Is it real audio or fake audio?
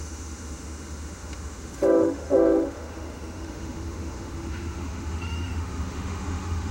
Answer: fake